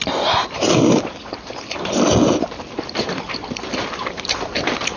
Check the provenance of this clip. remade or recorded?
remade